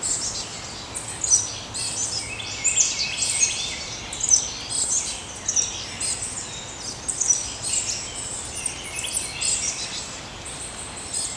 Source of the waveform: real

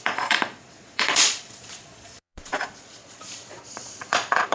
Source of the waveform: fake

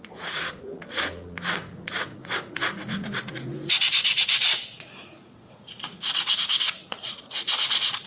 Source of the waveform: fake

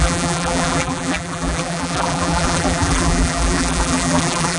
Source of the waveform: fake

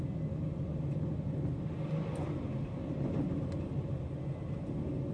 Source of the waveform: real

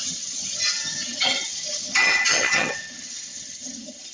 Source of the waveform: fake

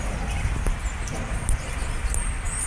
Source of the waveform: real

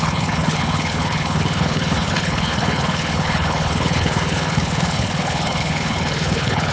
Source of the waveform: fake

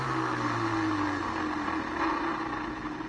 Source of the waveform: real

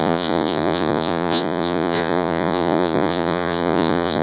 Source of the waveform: fake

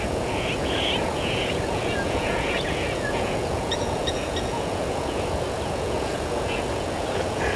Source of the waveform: fake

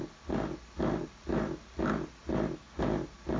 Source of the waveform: real